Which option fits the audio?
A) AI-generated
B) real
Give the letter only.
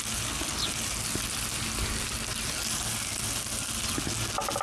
B